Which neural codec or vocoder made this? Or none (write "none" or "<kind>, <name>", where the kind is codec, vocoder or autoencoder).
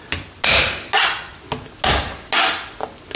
none